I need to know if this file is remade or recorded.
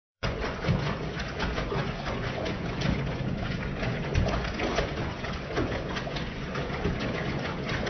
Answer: remade